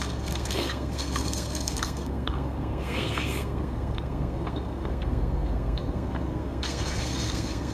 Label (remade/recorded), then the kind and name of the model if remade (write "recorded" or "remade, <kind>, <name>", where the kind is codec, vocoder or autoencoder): remade, codec, SNAC